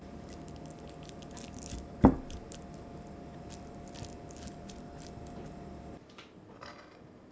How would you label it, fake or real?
real